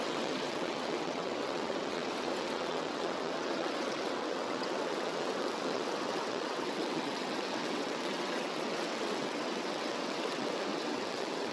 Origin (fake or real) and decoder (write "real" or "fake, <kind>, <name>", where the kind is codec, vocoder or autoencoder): fake, vocoder, WaveNeXt